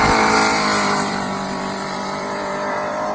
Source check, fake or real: fake